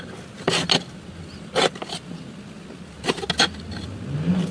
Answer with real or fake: real